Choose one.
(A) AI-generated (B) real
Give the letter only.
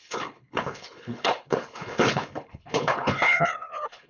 A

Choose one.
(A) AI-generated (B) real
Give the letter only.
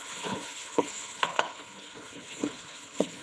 A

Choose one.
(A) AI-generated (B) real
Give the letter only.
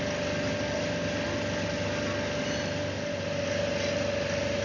B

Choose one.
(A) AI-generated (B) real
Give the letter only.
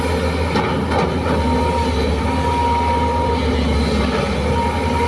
B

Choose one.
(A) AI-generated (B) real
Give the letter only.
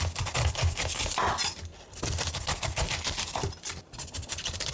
B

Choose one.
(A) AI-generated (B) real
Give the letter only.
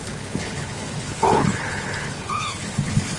A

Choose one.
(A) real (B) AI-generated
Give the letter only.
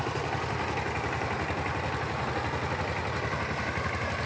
A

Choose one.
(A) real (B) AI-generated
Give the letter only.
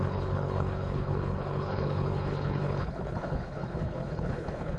B